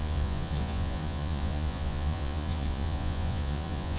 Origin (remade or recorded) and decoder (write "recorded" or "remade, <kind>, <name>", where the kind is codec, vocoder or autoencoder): remade, vocoder, Vocos